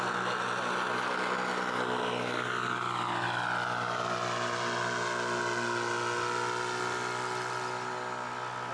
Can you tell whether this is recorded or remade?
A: recorded